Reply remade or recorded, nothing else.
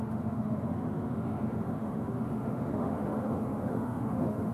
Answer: remade